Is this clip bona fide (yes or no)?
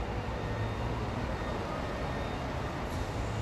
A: yes